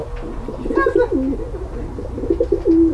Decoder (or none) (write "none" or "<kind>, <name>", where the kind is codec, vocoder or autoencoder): none